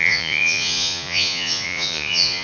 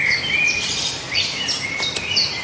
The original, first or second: second